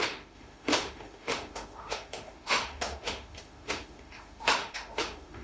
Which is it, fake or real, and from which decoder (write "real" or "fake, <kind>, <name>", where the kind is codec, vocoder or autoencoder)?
fake, autoencoder, DAC-VAE